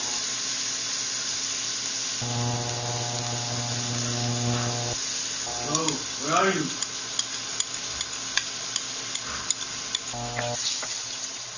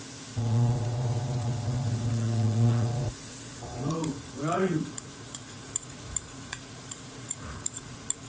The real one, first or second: first